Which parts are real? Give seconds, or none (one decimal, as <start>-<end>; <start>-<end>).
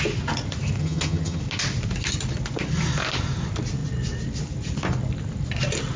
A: 0.0-0.8; 1.4-6.0